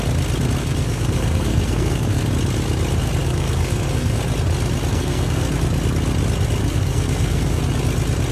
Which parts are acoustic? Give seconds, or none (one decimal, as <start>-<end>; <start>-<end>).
0.0-0.6; 2.3-3.2; 4.2-4.9; 5.5-6.6; 7.6-8.3